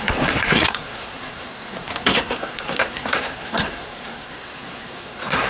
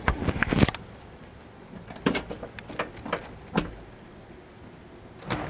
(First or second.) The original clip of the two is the second